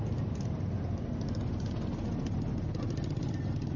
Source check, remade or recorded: recorded